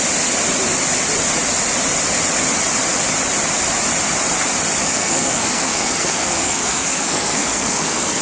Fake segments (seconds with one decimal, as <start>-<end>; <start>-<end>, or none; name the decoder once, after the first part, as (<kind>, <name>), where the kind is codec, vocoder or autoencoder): 4.8-8.2 (codec, SNAC)